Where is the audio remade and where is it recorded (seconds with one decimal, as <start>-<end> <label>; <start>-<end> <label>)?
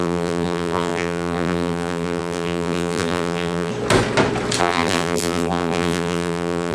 0.0-3.7 remade; 3.7-4.6 recorded; 4.6-6.7 remade